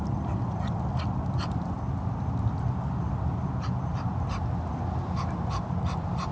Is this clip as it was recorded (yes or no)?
yes